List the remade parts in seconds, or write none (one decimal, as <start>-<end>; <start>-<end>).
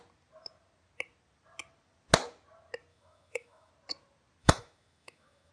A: 2.9-3.7; 4.4-5.5